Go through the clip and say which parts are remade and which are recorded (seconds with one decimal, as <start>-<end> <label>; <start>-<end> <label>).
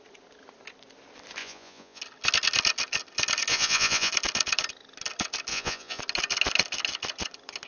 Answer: 0.0-1.4 recorded; 1.4-2.0 remade; 2.0-3.5 recorded; 3.5-4.1 remade; 4.1-5.5 recorded; 5.5-6.0 remade; 6.0-7.7 recorded